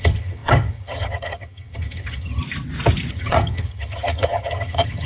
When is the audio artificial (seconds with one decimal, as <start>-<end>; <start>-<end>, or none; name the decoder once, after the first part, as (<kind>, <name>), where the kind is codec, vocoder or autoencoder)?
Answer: 0.0-2.4 (vocoder, HiFi-GAN); 3.1-5.1